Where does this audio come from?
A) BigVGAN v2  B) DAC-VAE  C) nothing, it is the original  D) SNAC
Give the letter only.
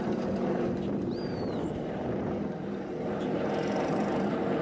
A